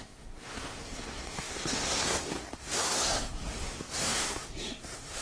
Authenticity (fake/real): fake